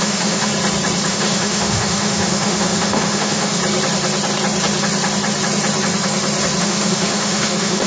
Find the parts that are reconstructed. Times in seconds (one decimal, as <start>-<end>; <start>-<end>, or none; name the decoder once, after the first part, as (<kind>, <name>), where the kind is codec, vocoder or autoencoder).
0.0-0.5 (autoencoder, DAC-VAE); 1.1-3.6; 6.6-7.9